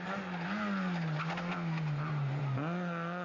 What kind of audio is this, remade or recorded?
recorded